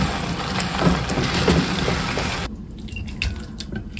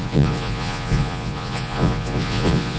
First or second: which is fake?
second